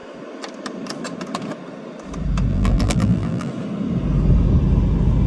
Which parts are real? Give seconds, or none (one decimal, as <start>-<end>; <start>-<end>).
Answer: 0.0-2.5; 3.5-5.3